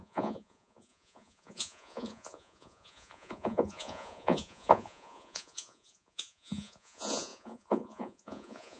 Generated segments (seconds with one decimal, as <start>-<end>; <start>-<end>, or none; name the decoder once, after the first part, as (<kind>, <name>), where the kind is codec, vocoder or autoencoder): 0.0-8.8 (vocoder, Vocos)